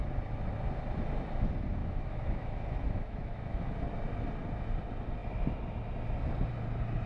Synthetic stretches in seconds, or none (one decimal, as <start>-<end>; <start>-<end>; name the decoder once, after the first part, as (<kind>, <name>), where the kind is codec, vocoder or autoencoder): 1.8-3.8 (autoencoder, DAC-VAE)